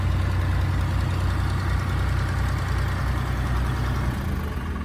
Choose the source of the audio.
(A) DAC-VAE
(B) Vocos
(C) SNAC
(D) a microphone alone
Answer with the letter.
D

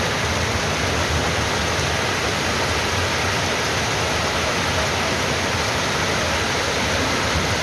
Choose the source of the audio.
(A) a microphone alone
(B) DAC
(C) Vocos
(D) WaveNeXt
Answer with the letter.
A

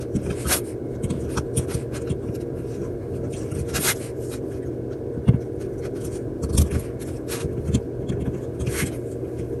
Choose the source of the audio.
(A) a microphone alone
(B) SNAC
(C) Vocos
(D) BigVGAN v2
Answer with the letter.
A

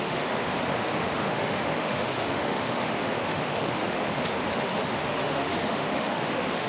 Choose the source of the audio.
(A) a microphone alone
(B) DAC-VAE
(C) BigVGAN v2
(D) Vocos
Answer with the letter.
B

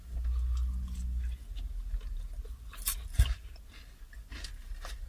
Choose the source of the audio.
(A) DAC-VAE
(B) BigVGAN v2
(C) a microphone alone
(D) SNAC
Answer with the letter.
C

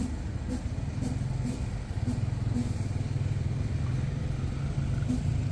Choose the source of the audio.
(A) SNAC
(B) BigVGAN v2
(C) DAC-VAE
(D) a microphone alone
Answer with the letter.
D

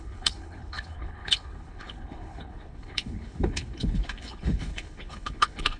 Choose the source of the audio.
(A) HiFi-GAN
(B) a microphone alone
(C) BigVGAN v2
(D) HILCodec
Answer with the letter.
D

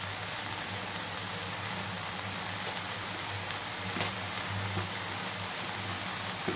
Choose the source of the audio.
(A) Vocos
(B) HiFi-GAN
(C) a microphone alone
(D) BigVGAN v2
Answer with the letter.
C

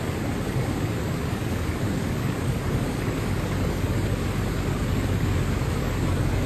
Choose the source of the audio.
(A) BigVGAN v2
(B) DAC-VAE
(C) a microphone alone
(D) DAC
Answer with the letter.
D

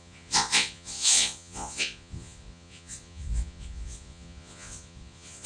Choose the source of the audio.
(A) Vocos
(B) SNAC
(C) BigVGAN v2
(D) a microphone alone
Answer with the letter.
A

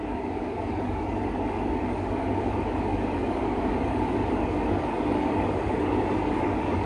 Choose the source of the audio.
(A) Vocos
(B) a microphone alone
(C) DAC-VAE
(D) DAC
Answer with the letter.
D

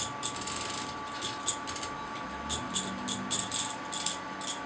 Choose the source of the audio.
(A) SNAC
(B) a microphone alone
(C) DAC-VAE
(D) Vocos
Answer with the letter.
B